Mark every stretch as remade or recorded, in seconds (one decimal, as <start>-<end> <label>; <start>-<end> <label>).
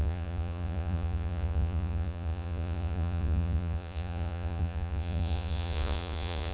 0.0-6.5 remade